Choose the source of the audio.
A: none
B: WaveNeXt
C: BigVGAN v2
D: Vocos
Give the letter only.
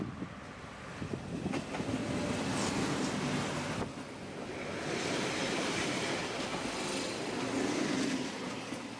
A